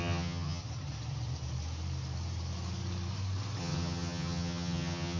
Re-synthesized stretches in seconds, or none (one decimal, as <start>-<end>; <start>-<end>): 0.0-0.6; 3.6-5.2

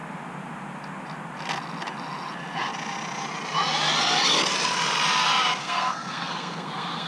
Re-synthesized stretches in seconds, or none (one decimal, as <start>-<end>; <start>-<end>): 5.6-7.1